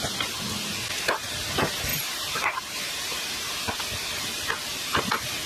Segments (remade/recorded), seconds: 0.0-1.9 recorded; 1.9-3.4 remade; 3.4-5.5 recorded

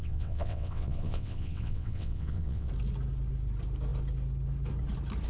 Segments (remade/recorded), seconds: 0.0-2.7 remade; 2.7-5.3 recorded

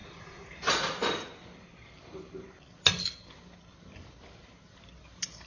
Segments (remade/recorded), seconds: 0.0-0.7 remade; 0.7-5.5 recorded

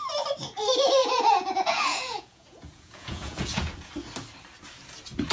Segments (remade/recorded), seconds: 0.0-1.0 recorded; 1.0-3.9 remade; 3.9-5.3 recorded

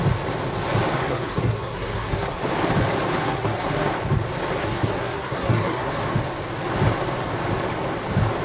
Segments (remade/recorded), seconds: 0.0-1.0 recorded; 1.0-2.4 remade; 2.4-3.2 recorded; 3.2-3.9 remade; 3.9-4.6 recorded; 4.6-5.9 remade; 5.9-8.4 recorded

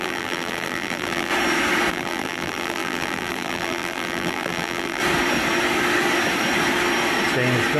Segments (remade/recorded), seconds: 0.0-1.3 remade; 1.3-1.9 recorded; 1.9-5.0 remade; 5.0-7.8 recorded

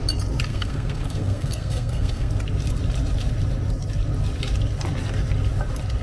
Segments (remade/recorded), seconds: 0.0-0.5 recorded; 0.5-2.3 remade; 2.3-6.0 recorded

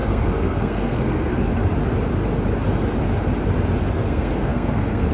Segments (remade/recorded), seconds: 0.0-1.5 remade; 1.5-3.9 recorded; 3.9-5.1 remade